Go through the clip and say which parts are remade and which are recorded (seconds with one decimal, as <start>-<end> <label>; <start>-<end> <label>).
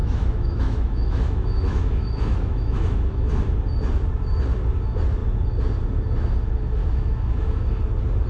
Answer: 0.0-3.3 remade; 3.3-6.8 recorded; 6.8-7.7 remade; 7.7-8.3 recorded